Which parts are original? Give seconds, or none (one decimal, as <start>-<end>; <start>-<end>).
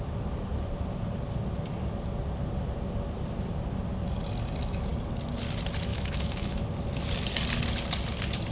0.0-5.9; 6.6-8.5